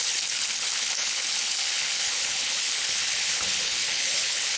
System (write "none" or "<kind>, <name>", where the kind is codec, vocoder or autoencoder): codec, HILCodec